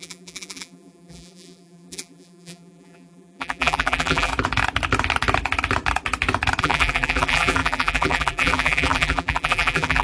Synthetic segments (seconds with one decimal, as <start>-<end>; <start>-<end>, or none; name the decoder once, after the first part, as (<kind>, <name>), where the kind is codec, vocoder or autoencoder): 0.0-4.3 (vocoder, BigVGAN v2); 6.6-10.0